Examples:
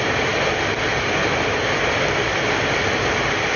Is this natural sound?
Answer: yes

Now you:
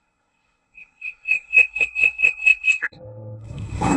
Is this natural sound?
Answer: no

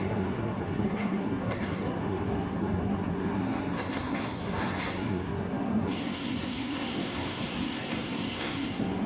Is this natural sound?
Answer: no